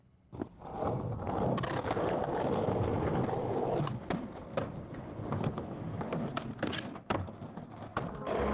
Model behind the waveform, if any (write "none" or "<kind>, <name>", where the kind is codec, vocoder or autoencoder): none